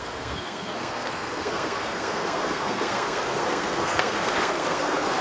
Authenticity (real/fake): fake